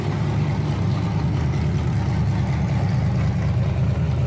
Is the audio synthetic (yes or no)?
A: no